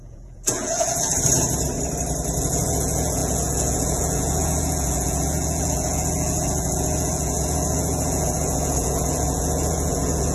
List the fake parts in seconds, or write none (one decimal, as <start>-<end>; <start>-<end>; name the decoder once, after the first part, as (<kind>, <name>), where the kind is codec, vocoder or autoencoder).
0.0-1.1 (vocoder, Vocos); 2.4-10.3